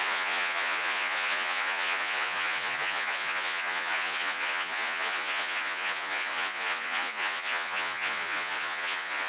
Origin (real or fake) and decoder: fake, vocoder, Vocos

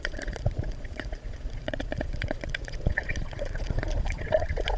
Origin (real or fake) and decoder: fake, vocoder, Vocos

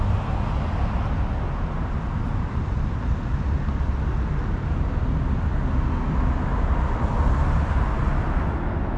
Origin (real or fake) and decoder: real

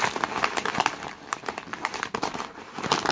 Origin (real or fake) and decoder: real